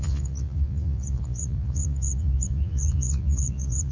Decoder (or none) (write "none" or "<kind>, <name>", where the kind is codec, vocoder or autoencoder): vocoder, Vocos